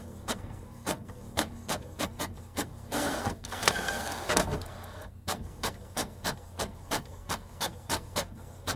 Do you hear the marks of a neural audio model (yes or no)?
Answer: yes